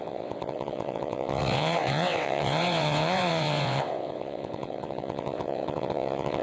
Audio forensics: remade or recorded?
remade